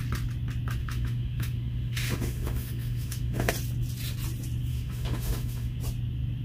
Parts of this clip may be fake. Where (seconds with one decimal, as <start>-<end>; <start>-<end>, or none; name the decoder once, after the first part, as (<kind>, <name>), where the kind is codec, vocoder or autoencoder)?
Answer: 0.8-3.5 (autoencoder, DAC-VAE); 4.7-5.8